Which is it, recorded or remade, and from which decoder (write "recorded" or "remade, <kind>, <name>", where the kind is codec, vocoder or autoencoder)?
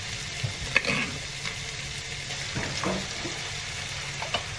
recorded